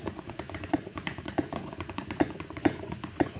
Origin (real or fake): fake